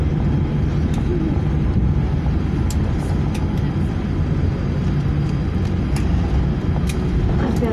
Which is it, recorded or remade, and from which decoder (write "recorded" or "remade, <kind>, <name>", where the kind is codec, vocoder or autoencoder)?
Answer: recorded